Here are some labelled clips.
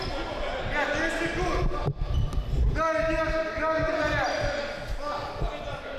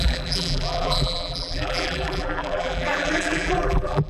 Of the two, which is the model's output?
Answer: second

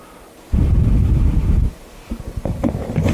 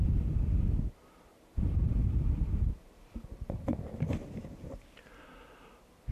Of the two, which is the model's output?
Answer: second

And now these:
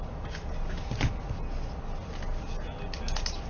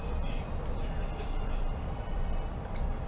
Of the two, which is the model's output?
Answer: second